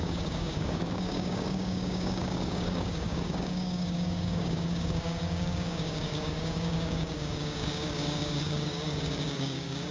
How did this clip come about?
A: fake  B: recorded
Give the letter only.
A